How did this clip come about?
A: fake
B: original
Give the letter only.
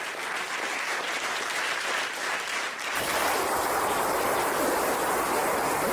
B